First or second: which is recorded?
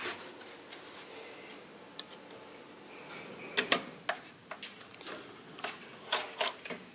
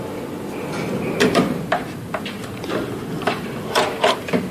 first